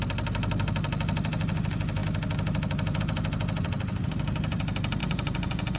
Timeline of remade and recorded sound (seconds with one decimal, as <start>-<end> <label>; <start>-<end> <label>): 0.0-5.0 recorded; 5.0-5.8 remade